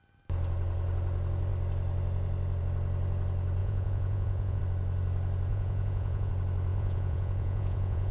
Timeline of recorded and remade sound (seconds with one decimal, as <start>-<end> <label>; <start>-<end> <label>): 0.0-3.6 recorded; 3.6-4.6 remade; 4.6-5.5 recorded; 5.5-6.3 remade; 6.3-6.7 recorded; 6.7-8.1 remade